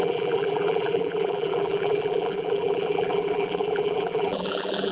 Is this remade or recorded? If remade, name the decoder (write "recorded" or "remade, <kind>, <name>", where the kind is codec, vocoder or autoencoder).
remade, vocoder, BigVGAN v2